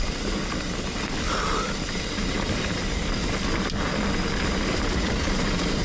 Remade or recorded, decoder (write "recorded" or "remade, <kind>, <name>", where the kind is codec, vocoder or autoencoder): recorded